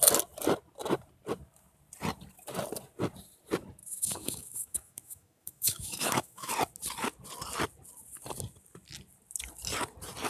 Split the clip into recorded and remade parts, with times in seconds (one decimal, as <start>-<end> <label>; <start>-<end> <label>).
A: 0.0-3.8 recorded; 3.8-6.5 remade; 6.5-10.3 recorded